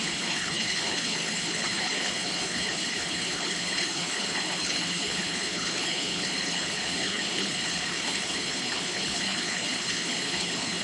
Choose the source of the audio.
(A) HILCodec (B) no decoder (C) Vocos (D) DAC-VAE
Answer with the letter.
A